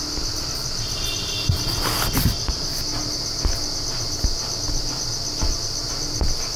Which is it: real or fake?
real